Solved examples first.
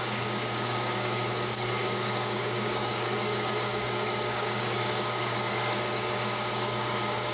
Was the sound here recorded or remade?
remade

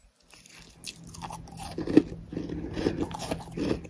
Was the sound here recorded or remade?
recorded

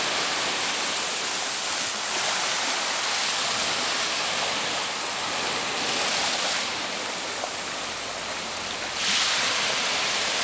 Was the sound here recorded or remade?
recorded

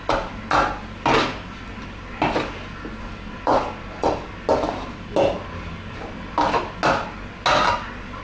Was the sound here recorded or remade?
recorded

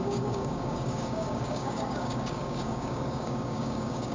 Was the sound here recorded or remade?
remade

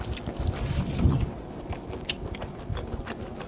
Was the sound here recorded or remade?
recorded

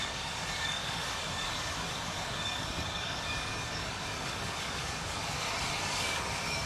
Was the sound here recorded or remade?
remade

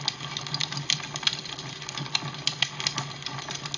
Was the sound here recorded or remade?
recorded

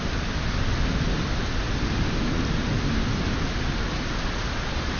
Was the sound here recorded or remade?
recorded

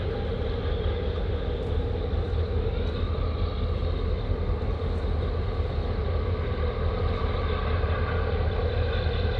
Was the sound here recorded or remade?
recorded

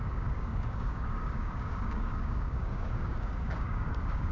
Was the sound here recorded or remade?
remade